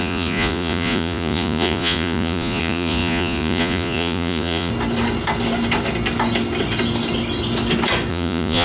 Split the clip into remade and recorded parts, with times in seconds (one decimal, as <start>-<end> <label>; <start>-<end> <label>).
0.0-4.7 remade; 4.7-8.1 recorded; 8.1-8.6 remade